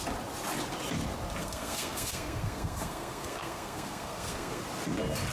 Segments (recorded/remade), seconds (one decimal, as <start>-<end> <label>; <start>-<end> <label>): 0.0-1.4 recorded; 1.4-4.6 remade; 4.6-5.3 recorded